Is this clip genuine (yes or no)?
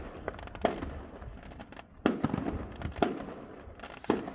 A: yes